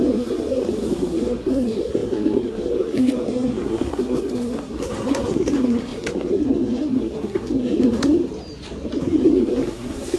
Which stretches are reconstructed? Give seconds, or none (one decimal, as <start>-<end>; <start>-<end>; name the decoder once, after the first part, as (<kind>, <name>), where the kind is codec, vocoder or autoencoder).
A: 0.0-8.2 (codec, SNAC); 9.0-10.2